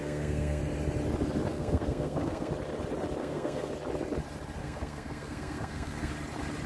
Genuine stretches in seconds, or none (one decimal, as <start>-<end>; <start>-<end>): 0.6-1.5; 2.5-3.2; 3.7-4.6; 6.1-6.7